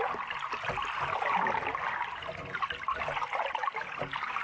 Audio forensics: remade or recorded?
recorded